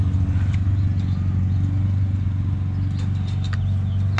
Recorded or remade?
recorded